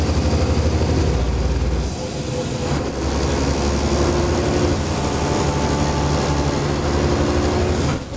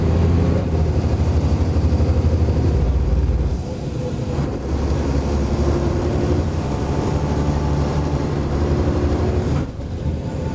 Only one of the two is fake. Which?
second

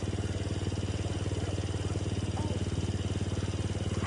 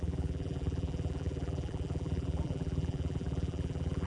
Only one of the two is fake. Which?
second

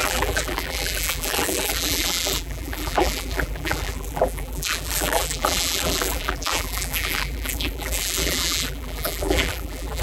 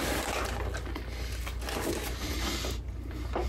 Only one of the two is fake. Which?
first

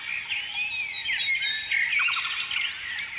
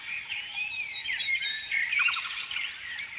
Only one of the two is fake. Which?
second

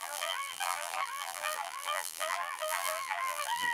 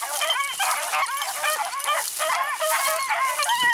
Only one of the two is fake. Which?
first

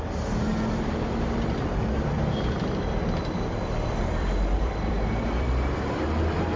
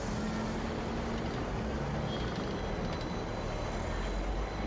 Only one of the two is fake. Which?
first